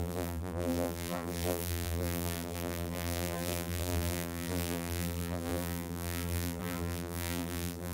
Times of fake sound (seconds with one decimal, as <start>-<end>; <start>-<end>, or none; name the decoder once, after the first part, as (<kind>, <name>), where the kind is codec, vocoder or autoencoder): 0.0-7.9 (vocoder, BigVGAN v2)